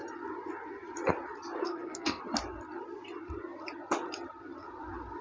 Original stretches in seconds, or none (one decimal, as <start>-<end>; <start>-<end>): 0.0-1.6; 2.2-5.2